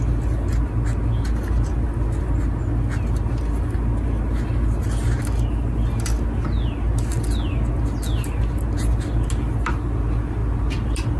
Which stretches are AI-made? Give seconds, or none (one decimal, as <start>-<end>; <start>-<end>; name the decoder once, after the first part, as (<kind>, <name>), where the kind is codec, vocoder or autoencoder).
none